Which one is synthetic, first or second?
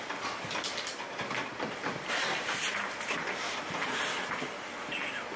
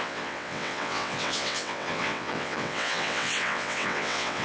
second